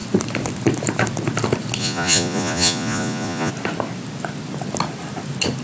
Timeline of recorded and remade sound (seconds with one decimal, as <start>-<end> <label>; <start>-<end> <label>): 0.0-1.8 recorded; 1.8-3.5 remade; 3.5-5.6 recorded